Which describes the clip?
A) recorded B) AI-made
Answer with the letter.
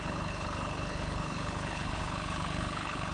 B